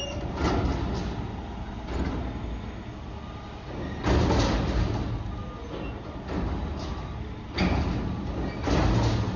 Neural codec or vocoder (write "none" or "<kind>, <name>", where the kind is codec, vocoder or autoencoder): none